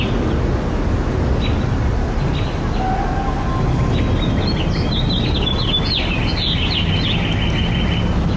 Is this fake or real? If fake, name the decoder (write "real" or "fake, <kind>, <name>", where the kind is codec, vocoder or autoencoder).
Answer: real